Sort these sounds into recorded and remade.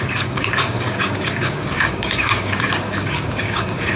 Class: remade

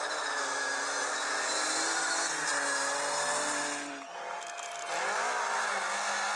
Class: recorded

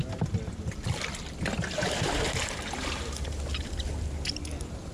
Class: recorded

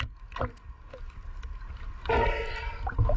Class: recorded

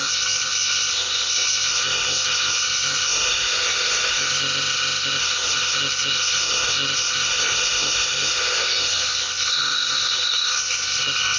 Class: remade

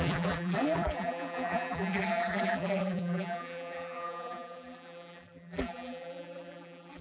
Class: remade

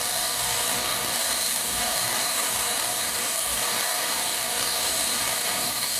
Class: remade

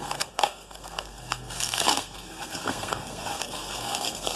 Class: remade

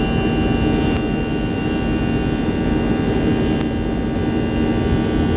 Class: recorded